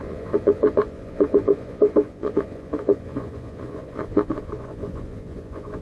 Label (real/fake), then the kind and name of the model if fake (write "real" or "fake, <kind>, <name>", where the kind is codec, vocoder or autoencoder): fake, vocoder, Vocos